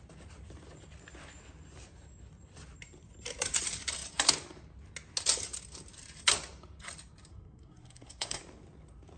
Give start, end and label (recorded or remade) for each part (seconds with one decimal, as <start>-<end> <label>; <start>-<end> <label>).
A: 0.0-7.3 recorded; 7.3-8.4 remade; 8.4-9.2 recorded